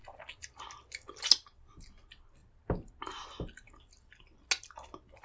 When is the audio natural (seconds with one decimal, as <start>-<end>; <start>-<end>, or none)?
0.0-2.4; 2.9-5.2